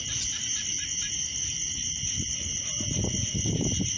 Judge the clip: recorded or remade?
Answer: recorded